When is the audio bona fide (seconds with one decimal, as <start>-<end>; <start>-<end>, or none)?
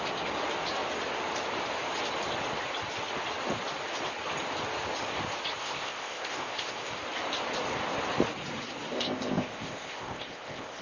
0.0-5.6; 6.9-8.9